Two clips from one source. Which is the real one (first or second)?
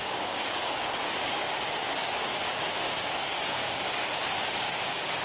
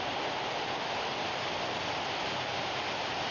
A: second